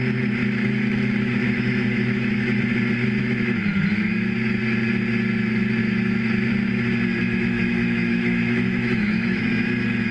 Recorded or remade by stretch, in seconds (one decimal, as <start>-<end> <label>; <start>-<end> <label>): 0.0-0.4 recorded; 0.4-2.6 remade; 2.6-3.2 recorded; 3.2-4.6 remade; 4.6-5.8 recorded; 5.8-6.5 remade; 6.5-7.2 recorded; 7.2-9.4 remade; 9.4-10.1 recorded